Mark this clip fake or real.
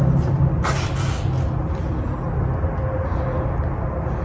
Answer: real